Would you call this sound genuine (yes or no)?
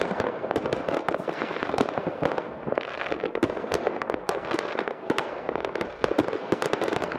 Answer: no